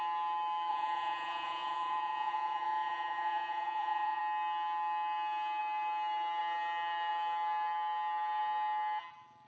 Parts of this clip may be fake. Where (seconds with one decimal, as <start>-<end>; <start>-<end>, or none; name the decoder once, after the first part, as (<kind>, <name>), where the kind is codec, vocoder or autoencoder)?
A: 0.7-4.2 (vocoder, Vocos)